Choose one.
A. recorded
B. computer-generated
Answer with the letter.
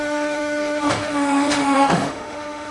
B